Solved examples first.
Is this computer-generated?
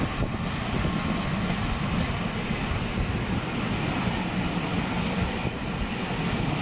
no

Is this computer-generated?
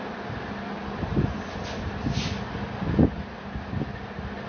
no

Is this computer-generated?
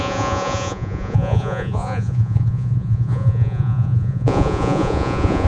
yes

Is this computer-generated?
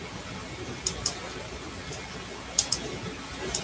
no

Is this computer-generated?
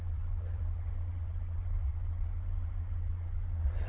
yes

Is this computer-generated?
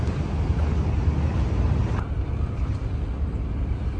no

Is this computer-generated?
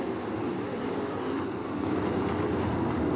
no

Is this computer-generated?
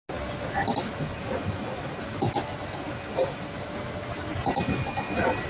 no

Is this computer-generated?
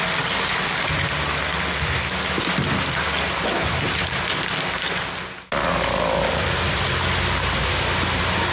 no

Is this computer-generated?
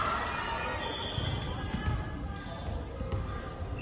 no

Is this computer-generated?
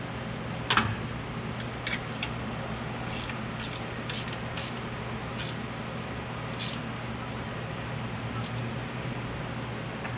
no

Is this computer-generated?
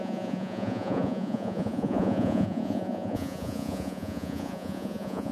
yes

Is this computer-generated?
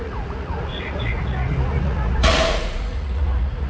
yes